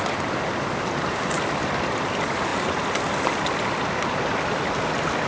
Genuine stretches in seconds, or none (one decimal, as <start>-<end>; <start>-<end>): 0.0-5.3

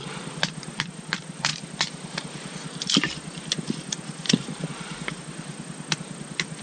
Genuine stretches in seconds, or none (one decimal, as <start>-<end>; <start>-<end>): 0.0-6.6

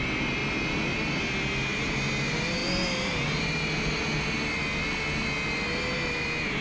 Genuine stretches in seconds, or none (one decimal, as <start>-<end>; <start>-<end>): 0.0-6.6

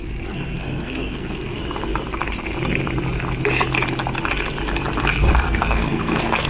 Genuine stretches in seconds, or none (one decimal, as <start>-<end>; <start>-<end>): 1.6-5.0

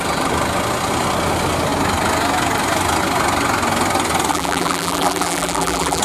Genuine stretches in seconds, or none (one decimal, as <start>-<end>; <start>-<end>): 0.0-4.3